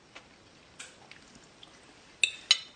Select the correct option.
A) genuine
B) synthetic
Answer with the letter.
A